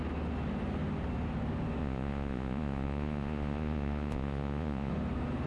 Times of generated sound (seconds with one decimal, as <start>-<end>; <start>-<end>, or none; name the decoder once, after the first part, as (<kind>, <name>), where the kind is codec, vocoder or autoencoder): 1.8-4.9 (vocoder, Vocos)